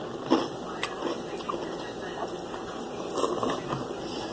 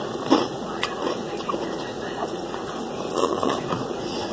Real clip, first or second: first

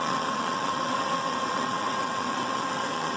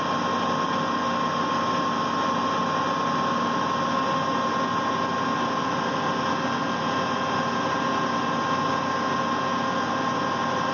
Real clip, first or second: second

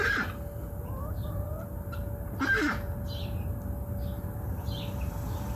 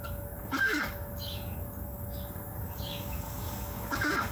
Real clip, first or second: first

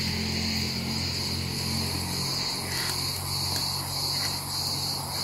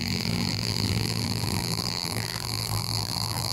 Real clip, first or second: first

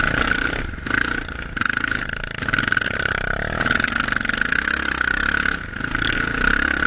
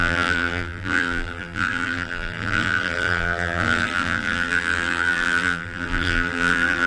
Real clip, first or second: first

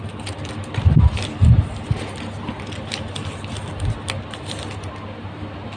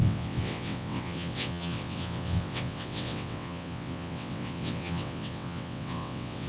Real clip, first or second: first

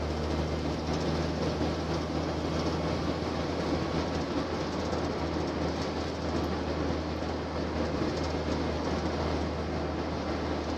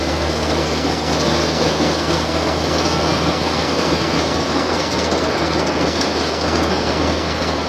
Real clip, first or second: first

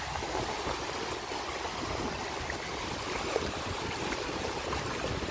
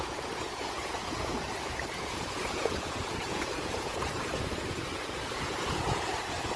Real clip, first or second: first